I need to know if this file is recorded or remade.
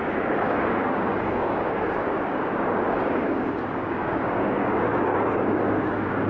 remade